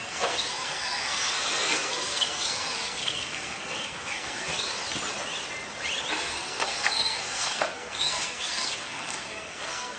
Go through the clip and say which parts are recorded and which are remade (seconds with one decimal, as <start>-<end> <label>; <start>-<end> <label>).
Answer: 0.0-4.7 remade; 4.7-6.1 recorded; 6.1-10.0 remade